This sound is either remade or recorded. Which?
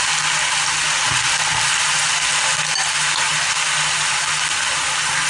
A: recorded